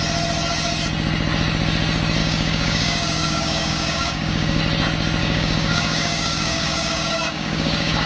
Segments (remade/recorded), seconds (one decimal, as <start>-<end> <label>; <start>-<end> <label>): 0.0-2.2 recorded; 2.2-4.6 remade; 4.6-5.2 recorded; 5.2-8.1 remade